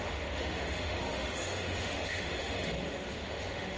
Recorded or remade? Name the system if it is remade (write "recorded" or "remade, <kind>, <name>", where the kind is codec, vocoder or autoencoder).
remade, autoencoder, DAC-VAE